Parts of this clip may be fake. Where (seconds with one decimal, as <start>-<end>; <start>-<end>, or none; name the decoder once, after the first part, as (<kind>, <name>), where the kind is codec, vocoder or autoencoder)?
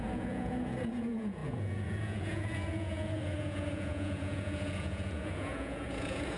0.0-6.4 (vocoder, Vocos)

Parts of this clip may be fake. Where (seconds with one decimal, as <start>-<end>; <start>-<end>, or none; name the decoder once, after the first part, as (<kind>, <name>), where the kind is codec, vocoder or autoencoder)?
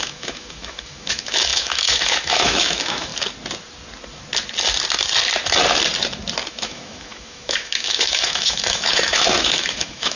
0.0-3.1 (autoencoder, DAC-VAE); 6.5-10.2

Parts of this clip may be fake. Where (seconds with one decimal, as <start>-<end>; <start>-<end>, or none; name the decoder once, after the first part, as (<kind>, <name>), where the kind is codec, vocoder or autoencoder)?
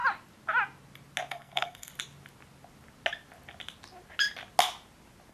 1.3-1.9 (codec, SNAC)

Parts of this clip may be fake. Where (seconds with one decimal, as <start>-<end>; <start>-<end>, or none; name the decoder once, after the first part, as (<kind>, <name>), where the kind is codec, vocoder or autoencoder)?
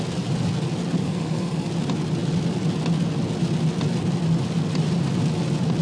1.0-1.7 (codec, SNAC)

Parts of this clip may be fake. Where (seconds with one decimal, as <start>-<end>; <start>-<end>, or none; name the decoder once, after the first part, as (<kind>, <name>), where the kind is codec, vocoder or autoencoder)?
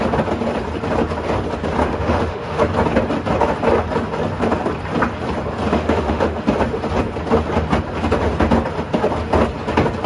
1.8-2.6 (autoencoder, DAC-VAE); 5.7-6.4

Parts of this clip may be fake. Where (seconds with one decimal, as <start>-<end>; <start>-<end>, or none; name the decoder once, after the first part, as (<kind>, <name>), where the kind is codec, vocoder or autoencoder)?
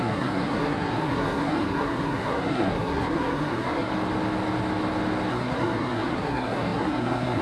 0.0-3.9 (codec, SNAC); 5.3-7.4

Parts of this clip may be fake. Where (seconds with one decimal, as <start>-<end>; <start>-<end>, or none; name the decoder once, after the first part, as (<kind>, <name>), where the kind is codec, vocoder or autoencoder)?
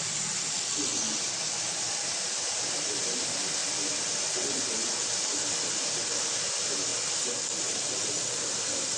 0.0-0.9 (vocoder, BigVGAN v2); 1.7-3.6; 5.0-6.9